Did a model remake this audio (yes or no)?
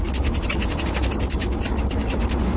no